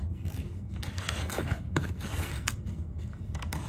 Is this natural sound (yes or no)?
no